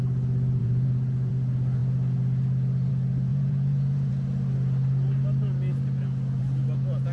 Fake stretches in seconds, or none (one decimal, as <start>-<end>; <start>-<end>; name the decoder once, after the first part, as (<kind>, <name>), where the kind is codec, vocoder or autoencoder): 0.6-1.3 (vocoder, Vocos); 3.3-4.1